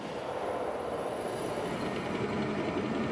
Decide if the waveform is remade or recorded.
remade